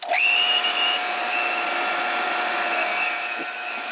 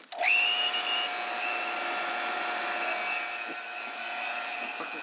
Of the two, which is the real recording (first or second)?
second